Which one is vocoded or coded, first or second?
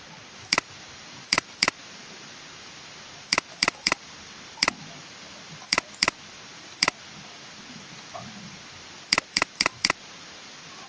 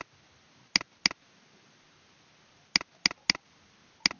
first